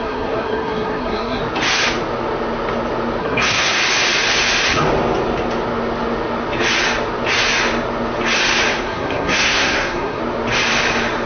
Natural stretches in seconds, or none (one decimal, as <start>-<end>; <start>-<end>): 1.4-3.2; 3.8-8.7; 10.2-11.3